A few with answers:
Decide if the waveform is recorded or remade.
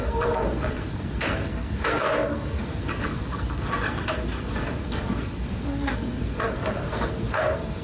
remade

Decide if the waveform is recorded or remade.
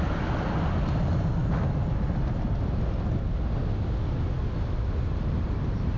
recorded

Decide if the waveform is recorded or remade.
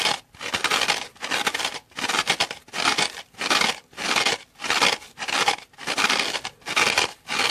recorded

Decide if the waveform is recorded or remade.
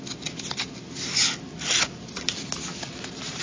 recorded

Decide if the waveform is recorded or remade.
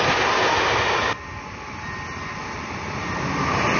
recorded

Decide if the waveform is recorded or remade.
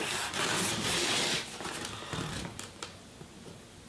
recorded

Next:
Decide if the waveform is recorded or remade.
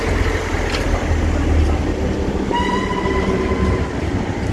recorded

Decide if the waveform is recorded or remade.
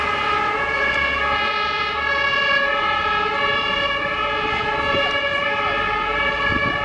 remade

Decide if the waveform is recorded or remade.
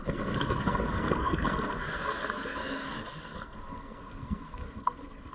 remade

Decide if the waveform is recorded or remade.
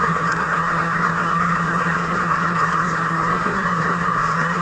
remade